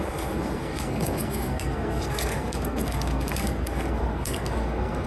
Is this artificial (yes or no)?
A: yes